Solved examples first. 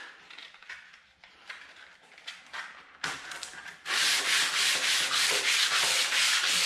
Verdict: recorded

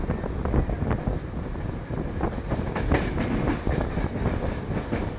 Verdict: recorded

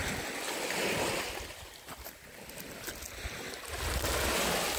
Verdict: recorded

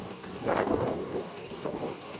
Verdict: remade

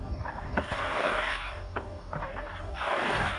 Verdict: remade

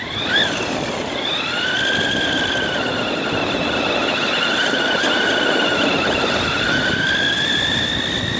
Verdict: recorded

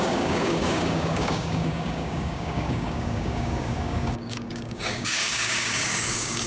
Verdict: remade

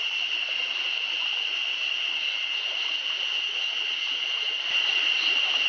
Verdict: recorded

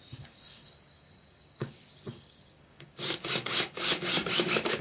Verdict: remade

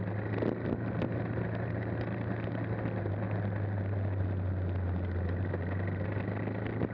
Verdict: recorded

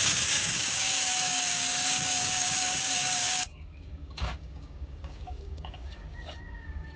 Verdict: remade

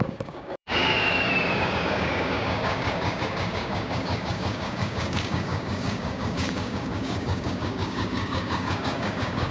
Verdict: remade